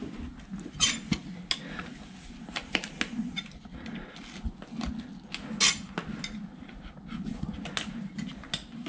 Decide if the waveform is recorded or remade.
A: recorded